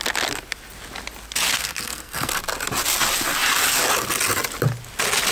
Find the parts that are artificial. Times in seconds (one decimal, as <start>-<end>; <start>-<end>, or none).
1.5-2.4